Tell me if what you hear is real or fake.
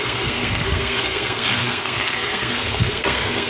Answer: fake